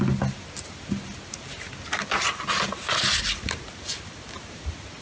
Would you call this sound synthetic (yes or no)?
no